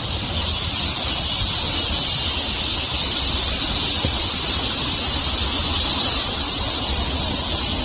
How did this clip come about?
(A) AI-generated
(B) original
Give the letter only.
B